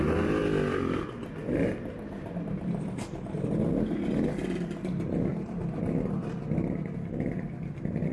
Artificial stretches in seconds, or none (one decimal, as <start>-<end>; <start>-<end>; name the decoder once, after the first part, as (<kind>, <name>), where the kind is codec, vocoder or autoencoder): none